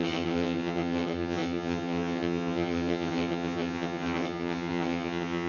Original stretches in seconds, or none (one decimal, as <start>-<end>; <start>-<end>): none